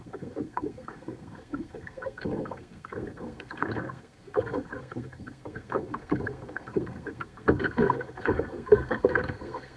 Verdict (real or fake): fake